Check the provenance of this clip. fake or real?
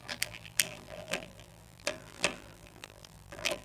fake